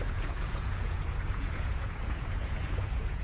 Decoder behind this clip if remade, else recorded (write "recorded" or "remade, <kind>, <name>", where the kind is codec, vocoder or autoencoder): remade, vocoder, Vocos